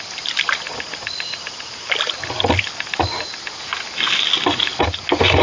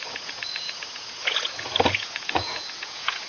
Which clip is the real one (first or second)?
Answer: first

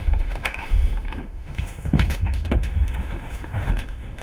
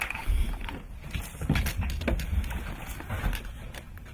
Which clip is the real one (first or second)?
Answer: second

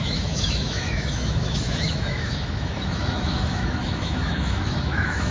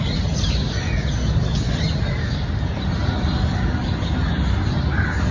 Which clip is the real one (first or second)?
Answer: second